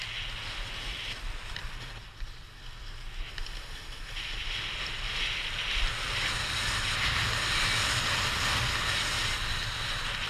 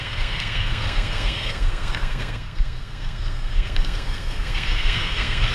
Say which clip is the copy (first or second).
second